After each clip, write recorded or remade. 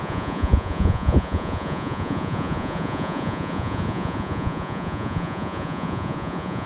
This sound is remade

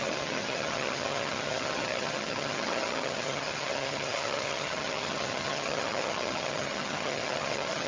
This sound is remade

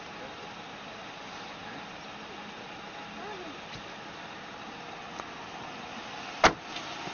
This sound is recorded